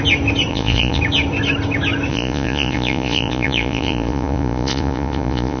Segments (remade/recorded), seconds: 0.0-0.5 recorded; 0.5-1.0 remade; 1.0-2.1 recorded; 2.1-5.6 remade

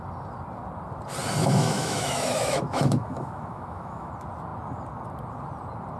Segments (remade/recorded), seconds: 0.0-1.4 recorded; 1.4-4.1 remade; 4.1-6.0 recorded

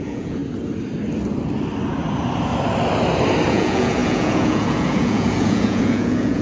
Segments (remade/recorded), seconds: 0.0-0.4 remade; 0.4-3.5 recorded; 3.5-6.4 remade

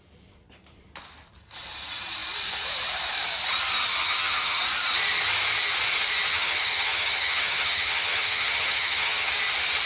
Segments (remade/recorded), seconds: 0.0-4.0 recorded; 4.0-4.6 remade; 4.6-6.3 recorded; 6.3-9.3 remade; 9.3-9.9 recorded

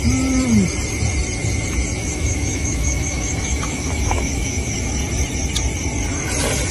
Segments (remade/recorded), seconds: 0.0-2.0 recorded; 2.0-4.9 remade; 4.9-6.7 recorded

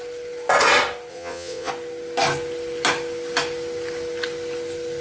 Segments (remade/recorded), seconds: 0.0-1.1 recorded; 1.1-1.7 remade; 1.7-5.0 recorded

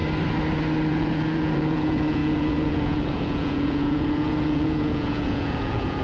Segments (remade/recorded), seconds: 0.0-0.9 recorded; 0.9-6.0 remade